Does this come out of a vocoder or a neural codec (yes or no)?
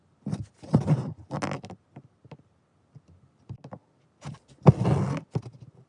no